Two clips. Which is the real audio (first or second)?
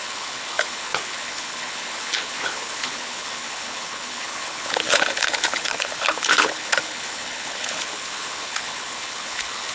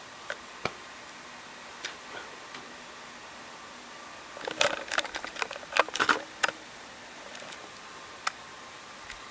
second